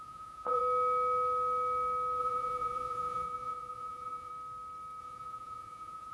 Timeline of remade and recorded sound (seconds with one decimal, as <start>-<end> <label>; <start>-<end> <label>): 0.0-0.6 remade; 0.6-2.2 recorded; 2.2-4.3 remade; 4.3-5.0 recorded; 5.0-6.1 remade